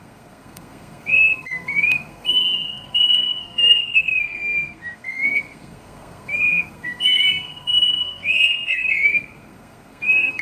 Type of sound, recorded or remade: remade